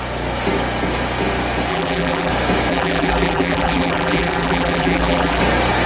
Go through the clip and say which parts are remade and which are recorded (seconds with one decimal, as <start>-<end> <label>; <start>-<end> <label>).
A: 0.0-1.7 recorded; 1.7-2.3 remade; 2.3-2.7 recorded; 2.7-5.4 remade; 5.4-5.9 recorded